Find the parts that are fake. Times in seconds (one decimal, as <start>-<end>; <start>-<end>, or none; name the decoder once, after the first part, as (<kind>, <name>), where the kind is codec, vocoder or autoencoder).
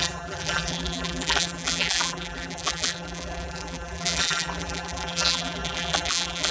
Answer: 0.0-6.5 (vocoder, BigVGAN v2)